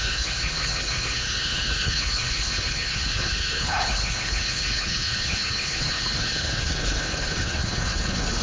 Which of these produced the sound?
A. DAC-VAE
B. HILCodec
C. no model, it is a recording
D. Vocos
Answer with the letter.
B